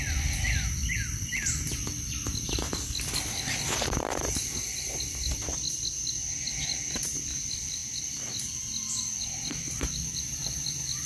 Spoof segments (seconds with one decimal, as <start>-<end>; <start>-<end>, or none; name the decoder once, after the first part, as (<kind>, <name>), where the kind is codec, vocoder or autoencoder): 4.4-5.7 (vocoder, BigVGAN v2)